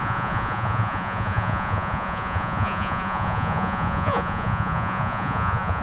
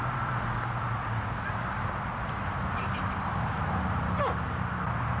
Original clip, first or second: second